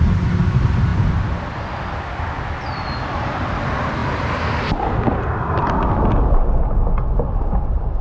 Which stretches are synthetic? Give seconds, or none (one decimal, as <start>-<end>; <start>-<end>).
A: none

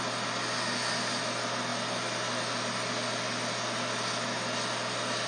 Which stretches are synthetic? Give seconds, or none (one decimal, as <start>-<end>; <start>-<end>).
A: none